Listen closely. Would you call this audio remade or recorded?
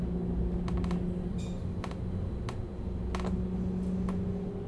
recorded